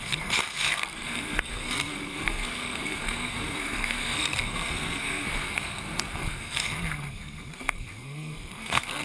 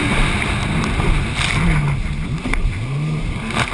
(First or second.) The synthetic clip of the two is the first